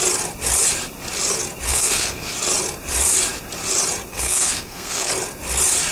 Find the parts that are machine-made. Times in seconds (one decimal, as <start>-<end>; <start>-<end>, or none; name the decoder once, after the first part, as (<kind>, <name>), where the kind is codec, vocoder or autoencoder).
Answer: 1.7-2.3 (codec, SNAC); 4.1-5.1